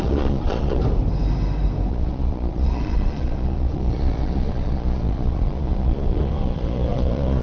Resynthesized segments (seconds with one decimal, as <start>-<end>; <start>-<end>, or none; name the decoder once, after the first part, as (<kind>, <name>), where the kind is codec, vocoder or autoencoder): 0.0-0.8 (vocoder, Vocos); 1.9-7.4

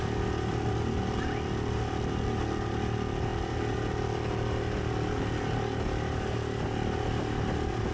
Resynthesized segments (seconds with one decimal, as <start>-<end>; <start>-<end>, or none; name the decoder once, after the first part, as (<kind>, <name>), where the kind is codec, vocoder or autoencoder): none

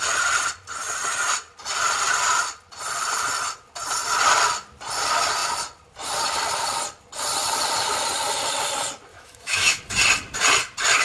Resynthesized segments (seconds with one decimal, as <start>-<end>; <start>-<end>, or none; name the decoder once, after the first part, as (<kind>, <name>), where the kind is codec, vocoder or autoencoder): 9.1-9.8 (autoencoder, DAC-VAE)

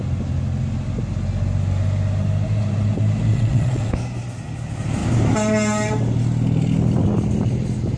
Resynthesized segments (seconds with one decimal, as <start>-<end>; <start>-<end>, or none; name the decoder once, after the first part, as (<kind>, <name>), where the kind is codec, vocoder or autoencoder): 3.3-3.9 (vocoder, WaveNeXt)

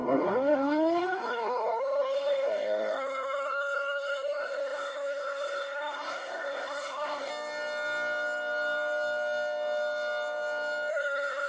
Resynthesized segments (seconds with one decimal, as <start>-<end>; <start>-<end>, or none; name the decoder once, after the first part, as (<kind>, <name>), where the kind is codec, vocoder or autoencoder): 0.0-7.3 (codec, SNAC); 10.9-11.5